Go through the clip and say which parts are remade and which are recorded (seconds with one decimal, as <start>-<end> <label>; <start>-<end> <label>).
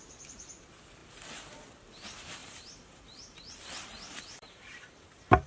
0.0-2.4 recorded; 2.4-5.5 remade